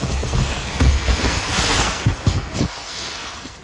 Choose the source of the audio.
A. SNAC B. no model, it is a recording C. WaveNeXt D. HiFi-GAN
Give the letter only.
A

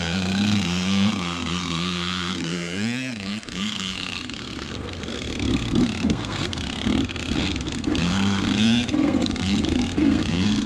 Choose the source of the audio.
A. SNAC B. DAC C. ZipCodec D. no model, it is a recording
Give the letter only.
A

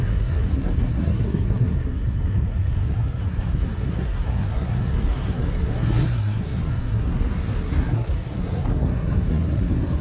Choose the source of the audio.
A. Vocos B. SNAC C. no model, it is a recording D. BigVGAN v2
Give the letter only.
B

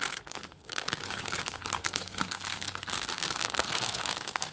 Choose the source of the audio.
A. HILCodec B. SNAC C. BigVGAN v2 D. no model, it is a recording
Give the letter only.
B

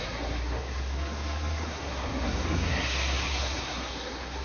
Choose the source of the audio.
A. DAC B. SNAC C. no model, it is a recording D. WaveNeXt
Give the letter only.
B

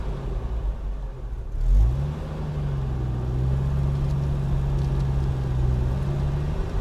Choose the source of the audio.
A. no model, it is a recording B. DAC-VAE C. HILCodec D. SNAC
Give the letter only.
A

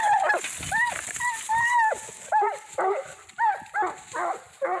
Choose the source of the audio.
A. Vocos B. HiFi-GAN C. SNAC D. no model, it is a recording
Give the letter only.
D